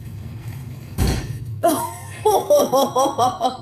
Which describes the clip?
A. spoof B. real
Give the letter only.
A